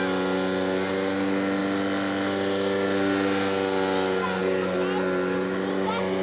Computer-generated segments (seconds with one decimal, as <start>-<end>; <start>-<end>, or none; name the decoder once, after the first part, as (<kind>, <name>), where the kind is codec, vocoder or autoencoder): none